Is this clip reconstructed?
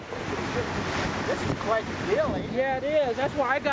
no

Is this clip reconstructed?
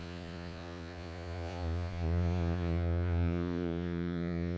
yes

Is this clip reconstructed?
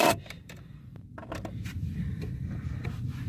yes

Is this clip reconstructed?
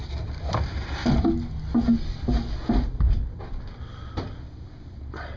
no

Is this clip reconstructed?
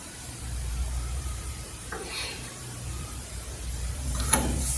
yes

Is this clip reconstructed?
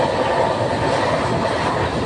no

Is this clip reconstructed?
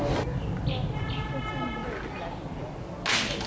no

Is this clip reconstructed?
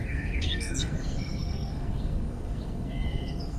yes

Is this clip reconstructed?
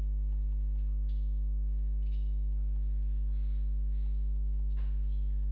no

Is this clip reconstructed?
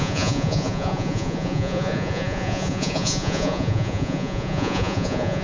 yes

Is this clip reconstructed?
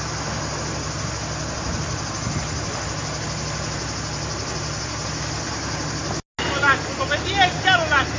no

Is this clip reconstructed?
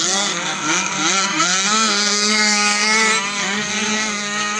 yes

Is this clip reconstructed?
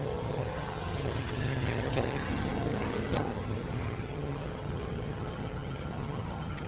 yes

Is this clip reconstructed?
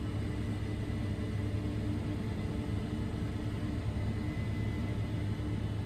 no